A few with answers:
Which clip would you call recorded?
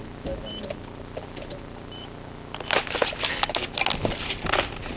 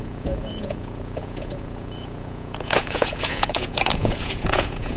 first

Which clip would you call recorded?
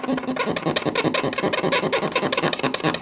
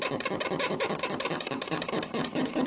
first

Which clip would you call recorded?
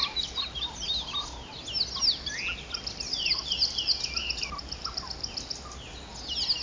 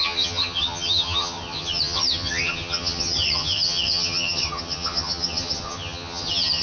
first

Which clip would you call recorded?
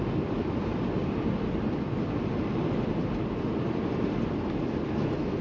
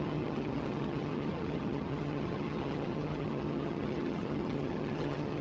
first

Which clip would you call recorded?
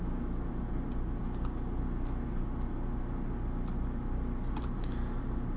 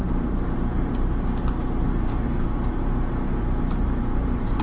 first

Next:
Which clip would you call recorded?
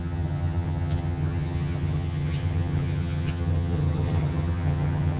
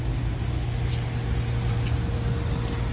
second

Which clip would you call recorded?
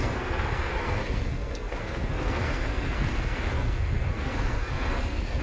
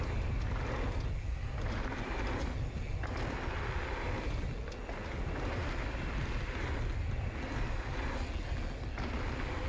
second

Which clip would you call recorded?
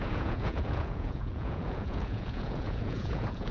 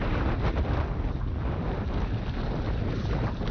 second